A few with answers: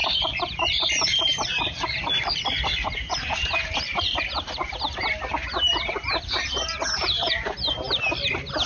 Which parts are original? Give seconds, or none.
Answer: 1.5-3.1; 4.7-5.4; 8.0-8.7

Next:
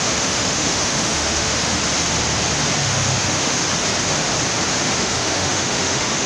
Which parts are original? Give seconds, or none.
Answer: 1.8-2.8; 3.6-5.0

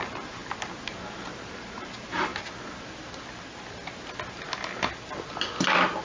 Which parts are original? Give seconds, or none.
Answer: 0.4-1.5; 2.3-6.0

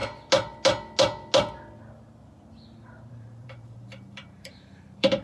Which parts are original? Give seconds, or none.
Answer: 0.0-3.1

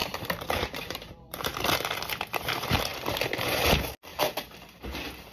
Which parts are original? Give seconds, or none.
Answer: 1.6-2.9; 3.6-4.1

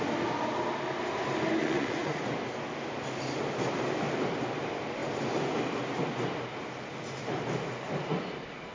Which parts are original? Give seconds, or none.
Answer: 0.0-1.6; 2.2-8.7